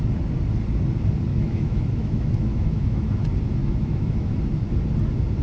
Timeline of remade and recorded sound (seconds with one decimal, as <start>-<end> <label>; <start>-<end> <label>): 0.0-1.3 recorded; 1.3-3.2 remade; 3.2-3.6 recorded; 3.6-4.4 remade; 4.4-5.4 recorded